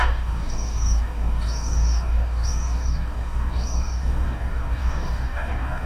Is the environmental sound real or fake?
fake